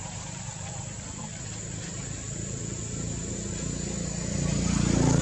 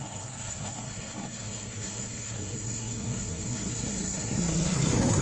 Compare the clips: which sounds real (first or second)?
first